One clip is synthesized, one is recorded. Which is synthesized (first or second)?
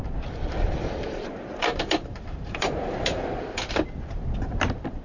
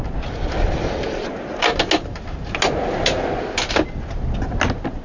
first